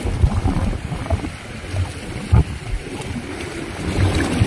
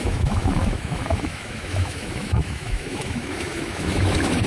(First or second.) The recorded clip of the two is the first